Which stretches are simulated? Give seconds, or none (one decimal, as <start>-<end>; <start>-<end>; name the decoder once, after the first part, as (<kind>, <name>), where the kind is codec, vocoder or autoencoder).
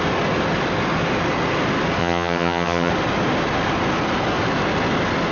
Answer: 2.0-2.9 (vocoder, HiFi-GAN)